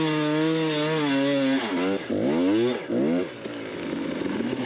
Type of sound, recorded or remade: recorded